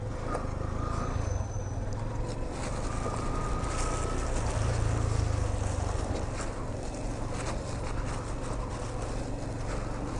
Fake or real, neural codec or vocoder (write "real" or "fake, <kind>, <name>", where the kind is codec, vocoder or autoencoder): real